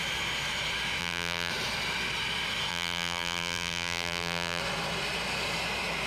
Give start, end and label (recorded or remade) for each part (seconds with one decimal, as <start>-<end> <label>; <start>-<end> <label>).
0.0-1.0 recorded; 1.0-1.5 remade; 1.5-2.7 recorded; 2.7-4.6 remade; 4.6-6.1 recorded